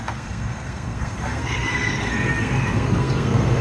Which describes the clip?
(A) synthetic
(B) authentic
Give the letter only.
A